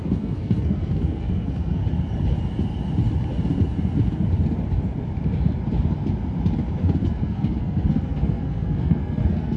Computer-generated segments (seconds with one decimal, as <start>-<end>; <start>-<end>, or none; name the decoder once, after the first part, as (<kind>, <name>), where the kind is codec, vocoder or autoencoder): 0.0-1.8 (codec, SNAC); 6.8-9.6